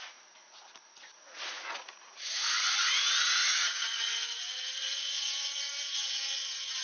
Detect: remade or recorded remade